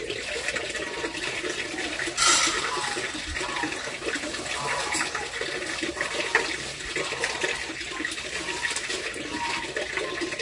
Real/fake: real